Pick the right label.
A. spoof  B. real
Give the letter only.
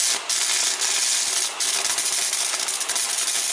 B